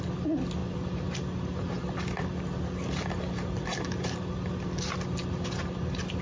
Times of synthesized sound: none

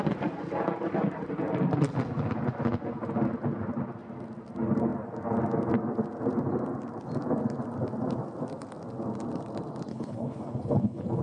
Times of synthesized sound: 9.9-11.2 (codec, HILCodec)

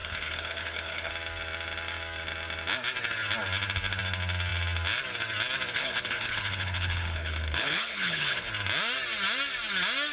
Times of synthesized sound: 0.0-1.1 (codec, HILCodec); 5.7-8.5

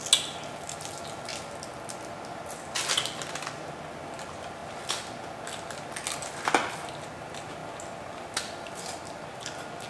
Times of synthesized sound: none